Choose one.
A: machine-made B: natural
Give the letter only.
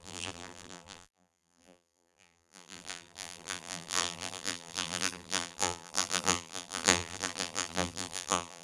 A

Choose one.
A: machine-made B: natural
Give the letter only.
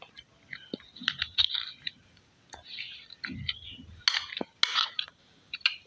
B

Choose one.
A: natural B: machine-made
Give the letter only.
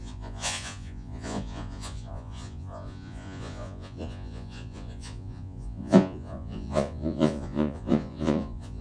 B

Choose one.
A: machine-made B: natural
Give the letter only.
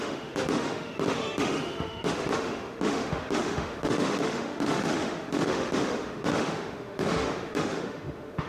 A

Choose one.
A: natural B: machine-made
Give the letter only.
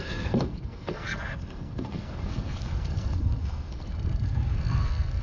B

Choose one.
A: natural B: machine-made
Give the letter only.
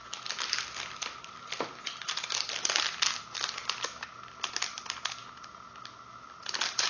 A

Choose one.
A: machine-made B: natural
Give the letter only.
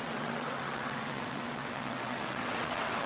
A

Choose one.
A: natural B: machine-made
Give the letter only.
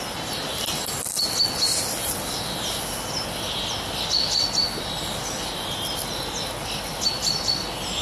A